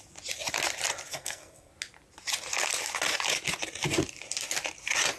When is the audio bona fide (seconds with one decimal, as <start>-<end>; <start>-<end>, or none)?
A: 0.0-1.1; 1.7-5.2